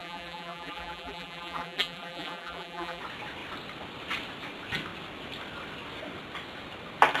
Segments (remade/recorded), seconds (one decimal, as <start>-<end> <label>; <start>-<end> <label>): 0.0-3.0 remade; 3.0-7.2 recorded